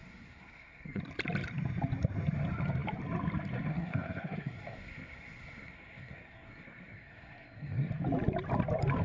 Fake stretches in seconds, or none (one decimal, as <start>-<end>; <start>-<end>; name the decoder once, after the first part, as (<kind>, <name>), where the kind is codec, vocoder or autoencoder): 0.0-1.0 (codec, SNAC); 3.7-7.9